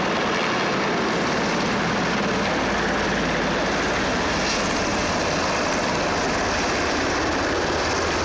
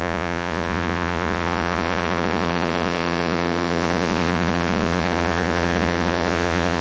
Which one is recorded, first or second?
first